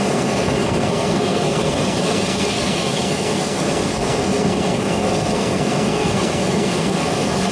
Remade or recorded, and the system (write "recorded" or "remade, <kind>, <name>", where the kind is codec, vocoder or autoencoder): remade, codec, SNAC